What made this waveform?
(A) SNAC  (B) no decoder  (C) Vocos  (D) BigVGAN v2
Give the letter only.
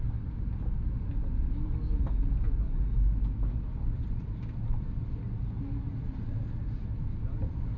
B